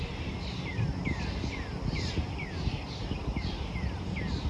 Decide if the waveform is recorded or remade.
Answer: recorded